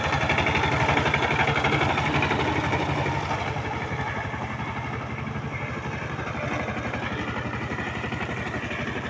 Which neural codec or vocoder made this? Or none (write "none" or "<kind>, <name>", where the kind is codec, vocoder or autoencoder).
none